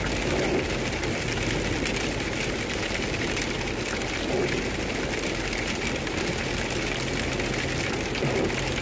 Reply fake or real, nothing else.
real